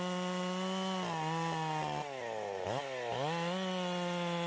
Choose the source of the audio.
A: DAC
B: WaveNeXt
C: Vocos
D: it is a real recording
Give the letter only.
D